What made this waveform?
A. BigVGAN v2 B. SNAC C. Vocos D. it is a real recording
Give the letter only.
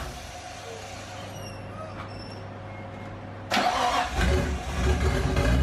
D